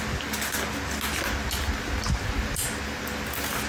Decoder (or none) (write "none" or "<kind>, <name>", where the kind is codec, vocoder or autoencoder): none